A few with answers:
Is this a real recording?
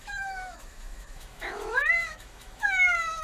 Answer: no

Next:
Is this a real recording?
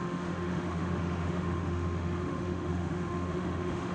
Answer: no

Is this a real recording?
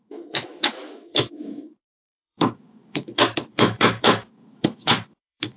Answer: no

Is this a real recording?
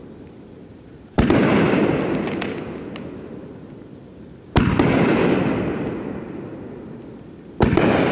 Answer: yes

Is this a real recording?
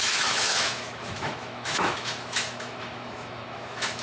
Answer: no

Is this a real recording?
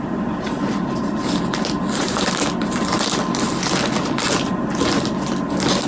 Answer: yes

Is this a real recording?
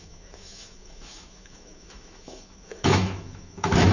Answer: no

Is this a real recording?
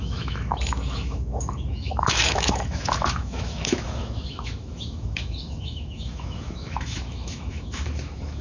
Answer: no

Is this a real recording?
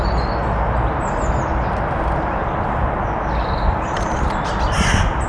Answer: yes